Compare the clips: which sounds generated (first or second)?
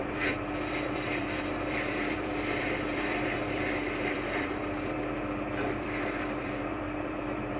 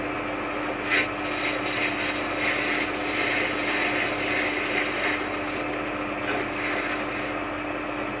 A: first